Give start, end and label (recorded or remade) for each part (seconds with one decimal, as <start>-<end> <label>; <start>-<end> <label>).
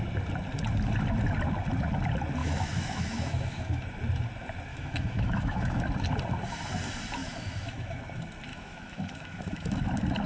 0.0-2.4 recorded; 2.4-3.8 remade; 3.8-4.7 recorded; 4.7-5.8 remade; 5.8-7.2 recorded; 7.2-8.0 remade; 8.0-8.5 recorded; 8.5-9.8 remade; 9.8-10.3 recorded